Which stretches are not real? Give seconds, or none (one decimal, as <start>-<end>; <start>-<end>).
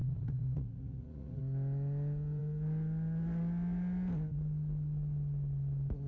0.0-1.4